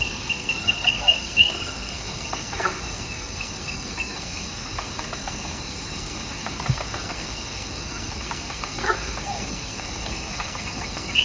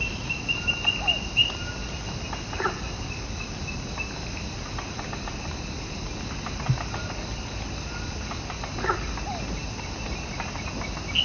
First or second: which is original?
second